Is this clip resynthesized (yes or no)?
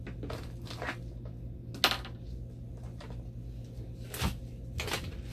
no